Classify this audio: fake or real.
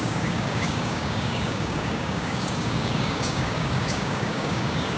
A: fake